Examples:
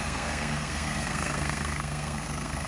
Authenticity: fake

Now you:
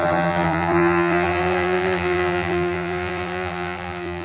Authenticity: fake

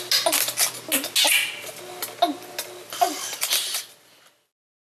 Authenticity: real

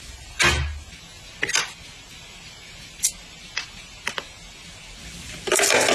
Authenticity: real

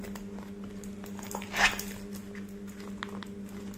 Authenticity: real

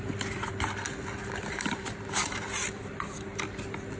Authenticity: real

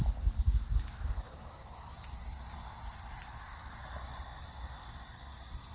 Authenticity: real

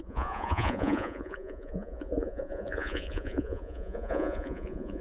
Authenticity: fake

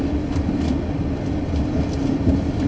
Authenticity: real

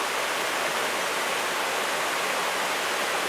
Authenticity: real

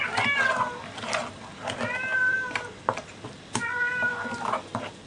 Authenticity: real